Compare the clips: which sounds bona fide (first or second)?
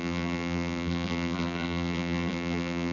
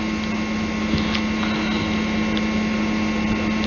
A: second